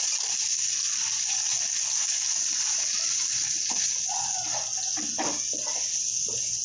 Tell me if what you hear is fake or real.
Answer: real